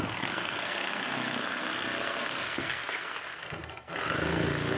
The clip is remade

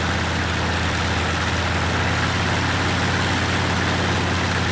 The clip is recorded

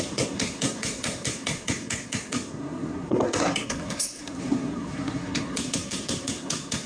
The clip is remade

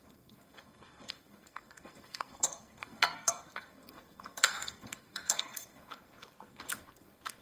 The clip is remade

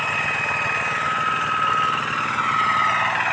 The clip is recorded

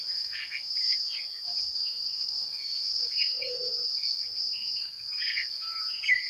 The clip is remade